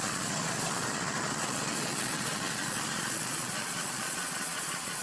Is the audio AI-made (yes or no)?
yes